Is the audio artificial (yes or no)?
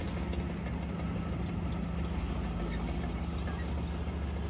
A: no